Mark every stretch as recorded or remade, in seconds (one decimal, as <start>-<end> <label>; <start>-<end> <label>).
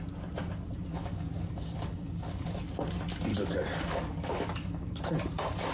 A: 0.0-0.9 recorded; 0.9-2.5 remade; 2.5-3.3 recorded; 3.3-5.0 remade; 5.0-5.7 recorded